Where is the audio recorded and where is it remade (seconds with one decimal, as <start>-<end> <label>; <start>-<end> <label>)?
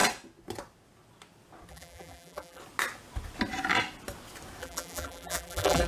0.0-1.7 recorded; 1.7-2.6 remade; 2.6-4.6 recorded; 4.6-5.9 remade